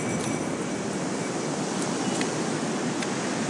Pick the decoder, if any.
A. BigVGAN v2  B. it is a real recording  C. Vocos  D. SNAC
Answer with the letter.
B